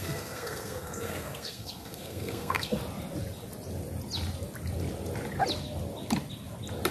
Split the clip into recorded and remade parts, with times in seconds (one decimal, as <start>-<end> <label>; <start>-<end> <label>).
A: 0.0-2.8 remade; 2.8-6.9 recorded